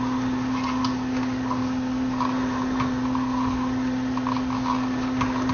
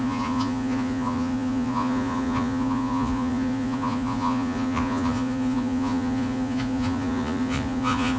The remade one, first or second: second